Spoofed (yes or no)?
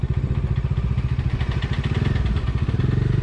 no